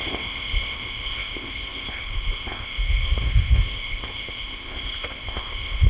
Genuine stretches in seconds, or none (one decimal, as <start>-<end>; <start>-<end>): none